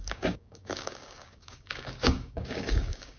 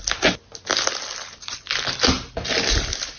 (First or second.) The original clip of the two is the second